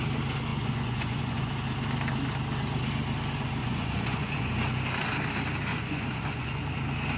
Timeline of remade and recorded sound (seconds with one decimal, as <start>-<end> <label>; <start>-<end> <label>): 0.0-0.5 recorded; 0.5-1.5 remade; 1.5-3.6 recorded; 3.6-4.5 remade; 4.5-5.7 recorded; 5.7-6.6 remade; 6.6-7.2 recorded